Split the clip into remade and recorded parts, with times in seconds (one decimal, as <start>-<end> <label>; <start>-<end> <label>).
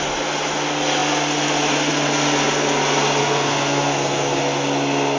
0.0-3.2 recorded; 3.2-4.4 remade; 4.4-5.2 recorded